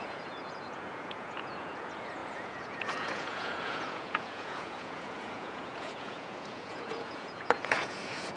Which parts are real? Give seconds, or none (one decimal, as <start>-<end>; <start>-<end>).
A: none